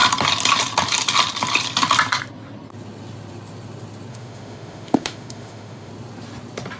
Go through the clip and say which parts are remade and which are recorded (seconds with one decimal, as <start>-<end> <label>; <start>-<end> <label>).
0.0-4.1 recorded; 4.1-5.9 remade; 5.9-6.8 recorded